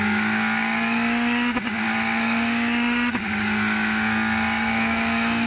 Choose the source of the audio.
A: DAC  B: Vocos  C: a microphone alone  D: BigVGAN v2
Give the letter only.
A